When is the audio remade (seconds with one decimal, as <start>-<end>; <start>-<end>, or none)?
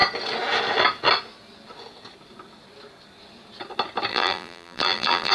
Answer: 4.1-5.3